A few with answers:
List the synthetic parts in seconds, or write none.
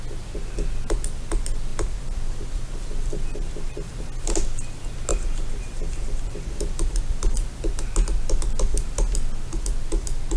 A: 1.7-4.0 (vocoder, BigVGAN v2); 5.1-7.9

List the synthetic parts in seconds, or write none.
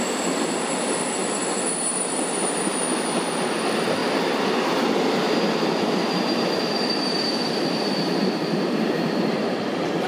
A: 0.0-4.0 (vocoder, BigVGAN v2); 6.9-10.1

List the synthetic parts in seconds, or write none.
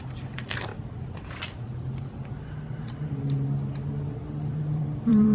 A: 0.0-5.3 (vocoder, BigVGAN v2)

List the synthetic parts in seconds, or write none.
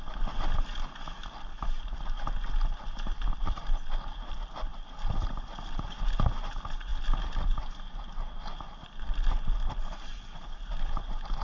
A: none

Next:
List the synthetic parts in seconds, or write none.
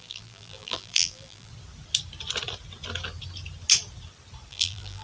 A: 0.0-1.5 (vocoder, BigVGAN v2); 4.5-5.0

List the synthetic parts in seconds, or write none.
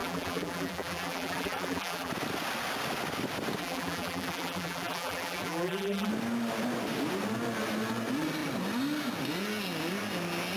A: 0.0-2.1 (vocoder, BigVGAN v2); 3.6-6.1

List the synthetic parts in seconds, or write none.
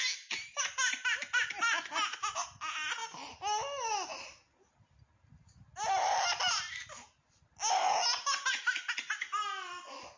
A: none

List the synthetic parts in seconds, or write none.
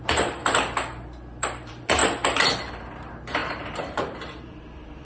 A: 0.0-0.4 (vocoder, BigVGAN v2); 1.4-2.0; 2.7-5.0